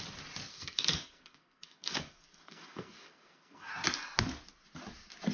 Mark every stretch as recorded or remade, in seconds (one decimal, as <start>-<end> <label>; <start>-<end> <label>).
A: 0.0-0.5 recorded; 0.5-3.7 remade; 3.7-5.3 recorded